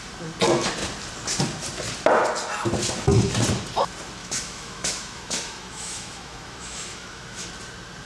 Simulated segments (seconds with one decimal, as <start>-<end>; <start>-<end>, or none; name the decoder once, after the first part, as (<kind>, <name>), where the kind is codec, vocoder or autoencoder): 4.2-7.5 (autoencoder, DAC-VAE)